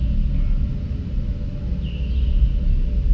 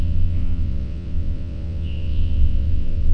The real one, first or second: first